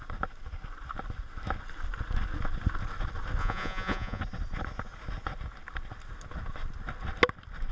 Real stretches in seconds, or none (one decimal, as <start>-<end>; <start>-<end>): 0.0-3.4; 4.2-7.7